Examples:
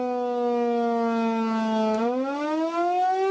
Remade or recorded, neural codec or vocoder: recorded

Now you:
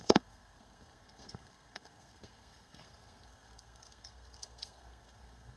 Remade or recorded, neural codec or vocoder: remade, codec, SNAC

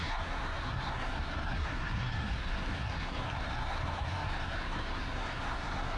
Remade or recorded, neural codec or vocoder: remade, codec, SNAC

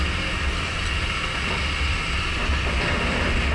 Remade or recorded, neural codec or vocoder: recorded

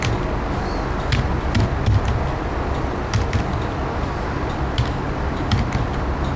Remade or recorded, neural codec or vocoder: recorded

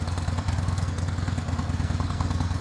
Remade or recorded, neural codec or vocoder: remade, codec, SNAC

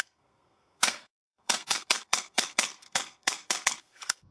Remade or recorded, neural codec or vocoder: remade, codec, SNAC